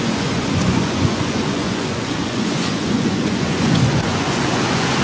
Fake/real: fake